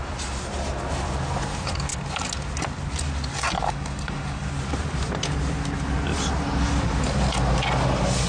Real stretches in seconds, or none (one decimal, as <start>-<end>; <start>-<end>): 0.0-3.3; 4.5-8.3